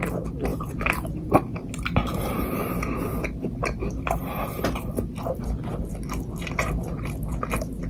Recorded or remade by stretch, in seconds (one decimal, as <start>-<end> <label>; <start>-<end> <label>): 0.0-0.5 recorded; 0.5-2.6 remade; 2.6-7.9 recorded